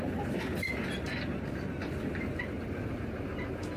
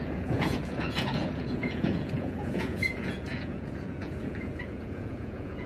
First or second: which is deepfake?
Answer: second